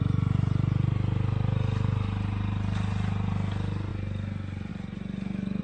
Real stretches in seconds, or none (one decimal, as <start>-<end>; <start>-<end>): 0.0-5.6

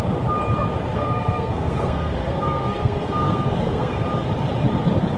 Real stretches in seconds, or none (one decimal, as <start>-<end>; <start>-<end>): 0.0-0.9; 4.0-5.2

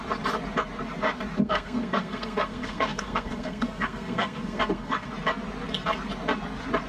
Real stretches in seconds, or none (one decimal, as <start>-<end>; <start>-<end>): 0.0-1.4; 5.1-6.9